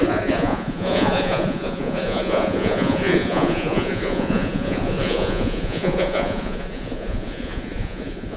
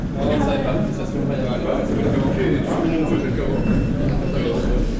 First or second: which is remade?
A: first